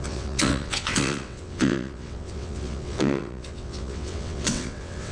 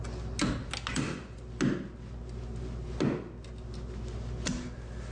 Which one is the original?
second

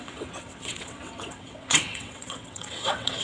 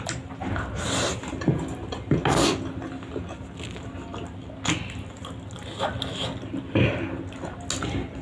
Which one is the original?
second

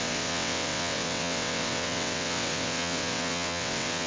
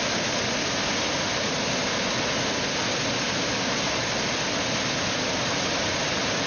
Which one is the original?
second